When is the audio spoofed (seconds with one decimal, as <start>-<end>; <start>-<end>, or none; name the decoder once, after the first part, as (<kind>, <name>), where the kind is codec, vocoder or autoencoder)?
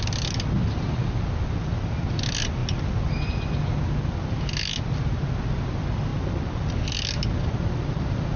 none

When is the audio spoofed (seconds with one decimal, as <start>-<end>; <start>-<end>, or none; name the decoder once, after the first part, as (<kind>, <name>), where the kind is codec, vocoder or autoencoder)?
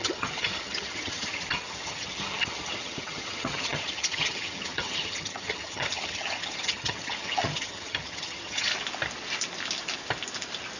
0.0-8.7 (vocoder, HiFi-GAN)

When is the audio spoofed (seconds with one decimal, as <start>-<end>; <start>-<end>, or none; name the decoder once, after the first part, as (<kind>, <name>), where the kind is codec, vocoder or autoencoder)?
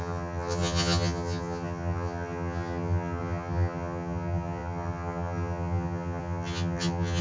0.0-7.2 (vocoder, HiFi-GAN)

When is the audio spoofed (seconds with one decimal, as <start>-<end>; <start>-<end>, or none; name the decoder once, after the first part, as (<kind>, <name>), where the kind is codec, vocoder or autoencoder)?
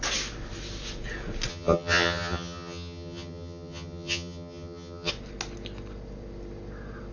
1.5-5.1 (vocoder, HiFi-GAN)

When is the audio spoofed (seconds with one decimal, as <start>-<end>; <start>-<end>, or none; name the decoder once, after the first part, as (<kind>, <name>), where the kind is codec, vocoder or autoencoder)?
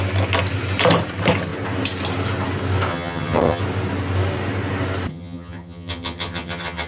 2.9-3.6 (vocoder, HiFi-GAN); 5.1-6.9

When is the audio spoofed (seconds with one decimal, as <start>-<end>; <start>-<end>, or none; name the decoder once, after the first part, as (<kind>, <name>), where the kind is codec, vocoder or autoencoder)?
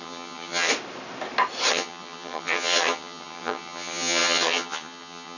0.0-0.7 (vocoder, HiFi-GAN); 1.7-5.4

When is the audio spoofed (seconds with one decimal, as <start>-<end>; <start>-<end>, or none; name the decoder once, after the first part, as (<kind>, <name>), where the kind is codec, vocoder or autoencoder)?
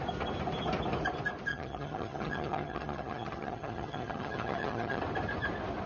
1.5-5.0 (vocoder, HiFi-GAN)